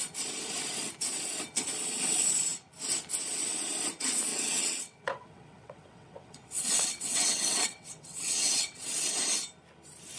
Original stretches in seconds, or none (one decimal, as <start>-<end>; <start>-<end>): 0.0-4.3; 9.1-10.2